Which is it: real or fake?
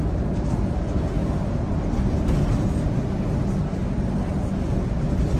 real